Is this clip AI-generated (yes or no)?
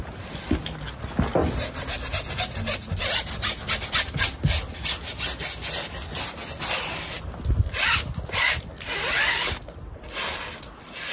no